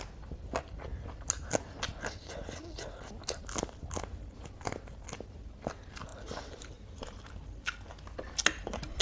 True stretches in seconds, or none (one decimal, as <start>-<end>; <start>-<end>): 0.0-6.1; 7.2-9.0